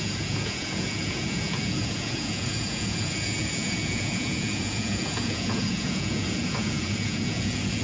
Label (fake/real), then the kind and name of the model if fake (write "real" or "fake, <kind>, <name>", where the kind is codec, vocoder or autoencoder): fake, vocoder, Vocos